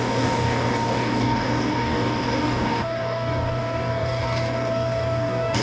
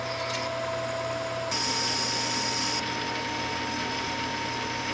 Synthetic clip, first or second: first